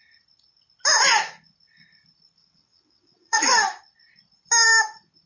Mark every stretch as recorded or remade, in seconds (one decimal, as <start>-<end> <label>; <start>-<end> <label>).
0.0-2.4 recorded; 2.4-3.5 remade; 3.5-5.3 recorded